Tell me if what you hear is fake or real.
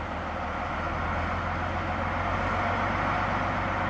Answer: real